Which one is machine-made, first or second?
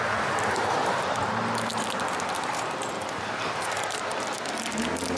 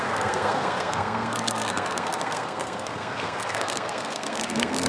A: second